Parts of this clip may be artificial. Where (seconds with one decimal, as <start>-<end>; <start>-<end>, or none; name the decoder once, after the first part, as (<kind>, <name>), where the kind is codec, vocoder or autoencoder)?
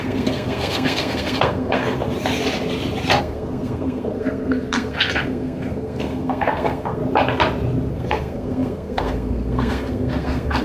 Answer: 0.0-2.0 (codec, SNAC); 3.2-7.0; 7.9-10.6